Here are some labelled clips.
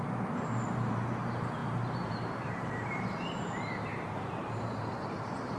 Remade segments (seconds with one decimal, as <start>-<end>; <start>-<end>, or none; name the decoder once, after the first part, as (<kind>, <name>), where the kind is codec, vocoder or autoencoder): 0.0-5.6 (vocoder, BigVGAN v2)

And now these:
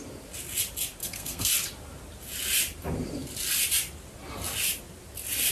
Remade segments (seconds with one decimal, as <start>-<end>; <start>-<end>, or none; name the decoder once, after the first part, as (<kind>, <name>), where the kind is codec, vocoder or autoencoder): 1.0-1.5 (codec, SNAC)

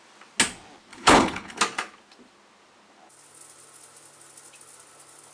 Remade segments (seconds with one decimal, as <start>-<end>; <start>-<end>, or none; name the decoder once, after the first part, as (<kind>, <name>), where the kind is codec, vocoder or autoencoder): 0.9-1.6 (codec, HILCodec)

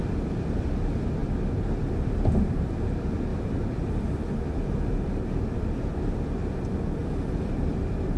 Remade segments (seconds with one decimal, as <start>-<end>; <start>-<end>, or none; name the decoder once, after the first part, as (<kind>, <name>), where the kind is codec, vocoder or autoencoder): 1.2-1.9 (vocoder, BigVGAN v2); 7.0-7.7

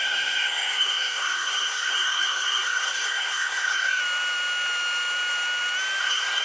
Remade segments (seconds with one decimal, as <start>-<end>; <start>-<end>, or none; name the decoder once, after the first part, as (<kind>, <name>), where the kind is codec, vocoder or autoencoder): 0.0-4.0 (codec, SNAC); 6.0-6.4

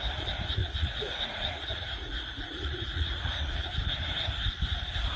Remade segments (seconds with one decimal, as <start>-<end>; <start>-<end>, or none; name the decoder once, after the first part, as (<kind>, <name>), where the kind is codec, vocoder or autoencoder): 0.6-3.7 (vocoder, Vocos)